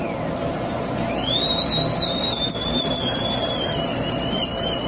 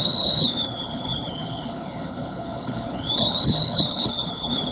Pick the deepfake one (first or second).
second